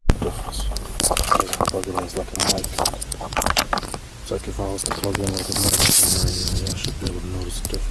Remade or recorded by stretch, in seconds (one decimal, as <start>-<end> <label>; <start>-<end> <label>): 0.0-2.4 recorded; 2.4-3.7 remade; 3.7-6.4 recorded; 6.4-7.1 remade; 7.1-7.9 recorded